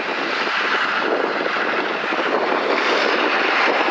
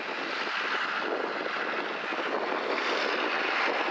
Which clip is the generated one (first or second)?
first